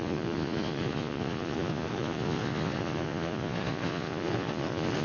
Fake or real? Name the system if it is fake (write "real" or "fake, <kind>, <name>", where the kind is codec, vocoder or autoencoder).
fake, vocoder, Vocos